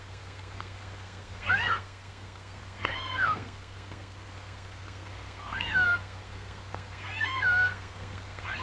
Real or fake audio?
fake